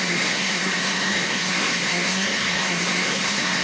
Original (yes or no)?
no